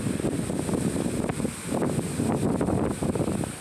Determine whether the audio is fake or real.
real